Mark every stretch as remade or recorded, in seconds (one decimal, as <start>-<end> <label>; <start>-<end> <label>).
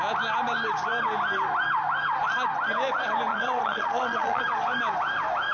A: 0.0-3.3 recorded; 3.3-4.4 remade; 4.4-5.5 recorded